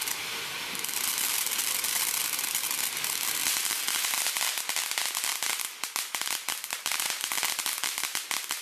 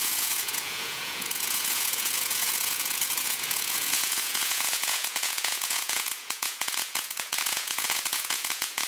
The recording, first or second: first